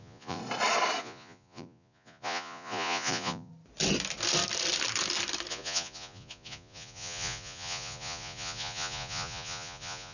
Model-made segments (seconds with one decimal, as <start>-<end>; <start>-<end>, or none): 0.0-0.4; 1.0-3.5; 5.5-10.1